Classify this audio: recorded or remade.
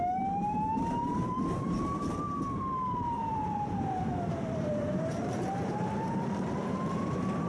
remade